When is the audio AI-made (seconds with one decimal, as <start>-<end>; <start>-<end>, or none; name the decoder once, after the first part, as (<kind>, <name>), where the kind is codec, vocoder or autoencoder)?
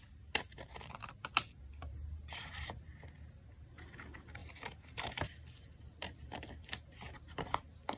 0.0-8.0 (vocoder, BigVGAN v2)